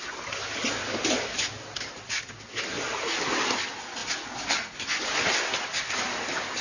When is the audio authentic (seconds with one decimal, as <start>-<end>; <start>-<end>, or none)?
0.0-0.8; 1.9-6.6